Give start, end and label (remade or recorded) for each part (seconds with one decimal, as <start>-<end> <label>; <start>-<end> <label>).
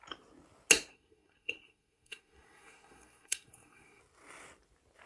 0.0-0.9 recorded; 0.9-4.0 remade; 4.0-5.1 recorded